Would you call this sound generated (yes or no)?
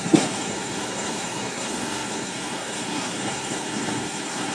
yes